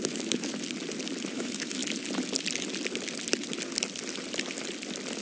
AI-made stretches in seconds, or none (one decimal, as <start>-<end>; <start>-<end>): 0.0-0.5; 1.3-1.8